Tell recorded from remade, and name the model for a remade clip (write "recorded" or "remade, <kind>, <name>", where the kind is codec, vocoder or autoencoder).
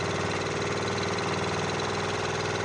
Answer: recorded